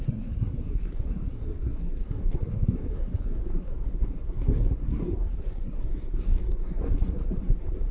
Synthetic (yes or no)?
yes